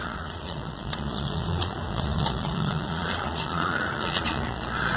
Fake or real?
fake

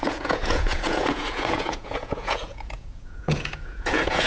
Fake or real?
fake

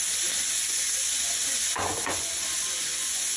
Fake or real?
fake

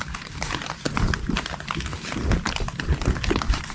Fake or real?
real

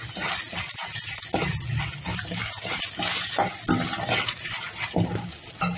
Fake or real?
real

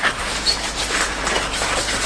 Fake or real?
real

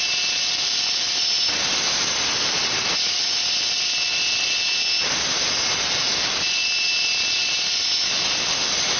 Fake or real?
real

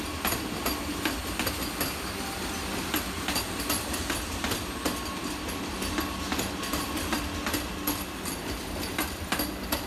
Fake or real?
real